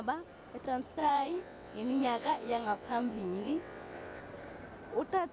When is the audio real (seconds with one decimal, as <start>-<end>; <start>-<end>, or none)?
0.0-1.0; 4.2-5.3